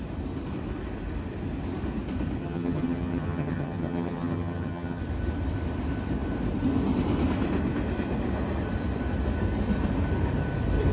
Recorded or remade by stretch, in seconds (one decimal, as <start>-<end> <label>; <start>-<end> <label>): 0.0-2.4 recorded; 2.4-5.0 remade; 5.0-10.9 recorded